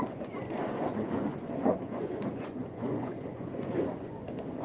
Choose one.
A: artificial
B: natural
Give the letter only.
A